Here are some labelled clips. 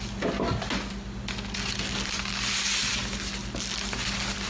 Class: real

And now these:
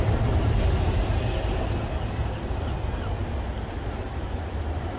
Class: real